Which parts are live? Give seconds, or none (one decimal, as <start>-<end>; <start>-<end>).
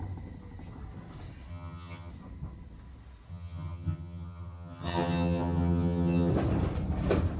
0.0-1.5; 2.1-3.3; 6.3-7.4